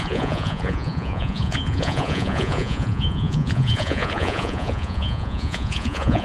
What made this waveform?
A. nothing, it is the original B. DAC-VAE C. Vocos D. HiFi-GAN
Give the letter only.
C